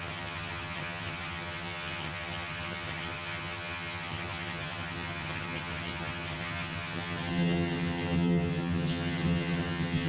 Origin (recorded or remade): remade